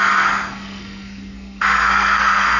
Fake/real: fake